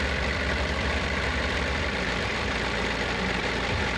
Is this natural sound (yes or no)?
no